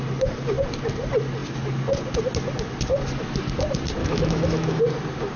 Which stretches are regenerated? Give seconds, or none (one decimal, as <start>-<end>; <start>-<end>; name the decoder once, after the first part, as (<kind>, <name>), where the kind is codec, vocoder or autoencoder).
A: 4.0-4.8 (autoencoder, DAC-VAE)